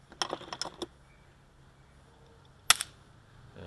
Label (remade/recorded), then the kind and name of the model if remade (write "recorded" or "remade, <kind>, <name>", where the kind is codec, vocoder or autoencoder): recorded